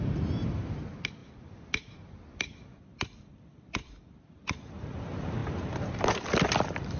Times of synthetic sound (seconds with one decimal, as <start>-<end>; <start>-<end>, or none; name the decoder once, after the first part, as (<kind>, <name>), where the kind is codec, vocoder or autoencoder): 1.2-4.7 (vocoder, BigVGAN v2)

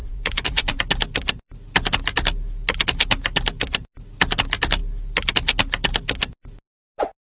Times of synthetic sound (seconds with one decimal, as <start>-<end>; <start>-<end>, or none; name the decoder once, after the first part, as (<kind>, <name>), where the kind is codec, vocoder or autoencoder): 0.0-0.8 (vocoder, Vocos)

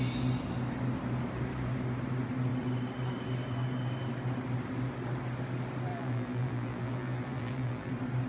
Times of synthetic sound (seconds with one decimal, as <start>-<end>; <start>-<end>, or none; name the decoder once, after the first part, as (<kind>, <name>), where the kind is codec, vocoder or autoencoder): 5.9-7.9 (vocoder, BigVGAN v2)